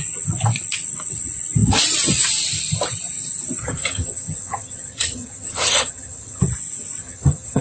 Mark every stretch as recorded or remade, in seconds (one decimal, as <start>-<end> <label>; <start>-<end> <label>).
0.0-3.6 recorded; 3.6-6.4 remade; 6.4-7.0 recorded; 7.0-7.6 remade